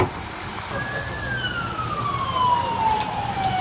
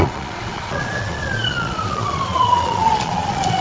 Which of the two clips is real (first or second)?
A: first